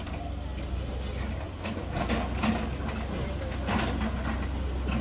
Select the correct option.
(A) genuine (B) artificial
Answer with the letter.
A